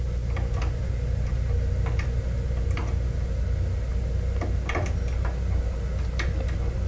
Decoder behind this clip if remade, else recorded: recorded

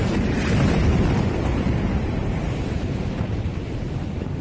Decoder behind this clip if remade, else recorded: remade, vocoder, BigVGAN v2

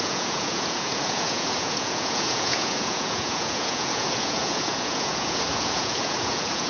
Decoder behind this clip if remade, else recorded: remade, vocoder, Vocos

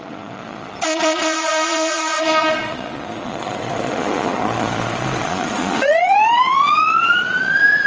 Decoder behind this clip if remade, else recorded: remade, vocoder, Vocos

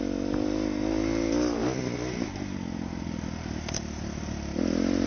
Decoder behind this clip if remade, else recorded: recorded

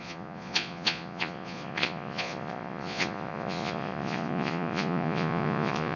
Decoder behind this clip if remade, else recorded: remade, vocoder, Vocos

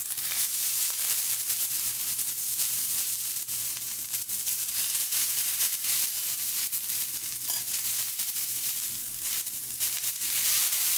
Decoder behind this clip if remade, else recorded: remade, vocoder, BigVGAN v2